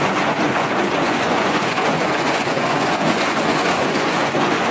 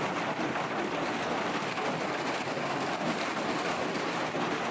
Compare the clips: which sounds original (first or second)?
second